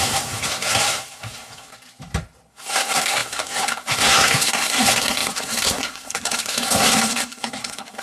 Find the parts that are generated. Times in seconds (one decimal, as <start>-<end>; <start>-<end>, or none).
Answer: 0.0-1.7; 2.5-8.0